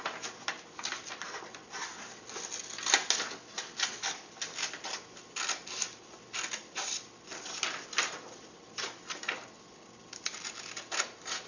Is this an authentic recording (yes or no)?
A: yes